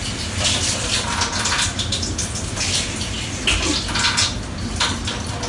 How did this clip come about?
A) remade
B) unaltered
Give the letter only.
B